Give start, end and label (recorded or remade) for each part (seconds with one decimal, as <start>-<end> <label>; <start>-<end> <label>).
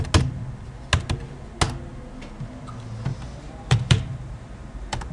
0.0-3.1 recorded; 3.1-5.1 remade